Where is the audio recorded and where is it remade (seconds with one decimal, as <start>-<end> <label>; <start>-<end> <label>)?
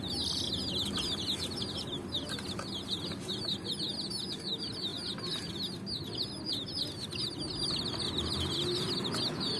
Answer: 0.0-9.6 recorded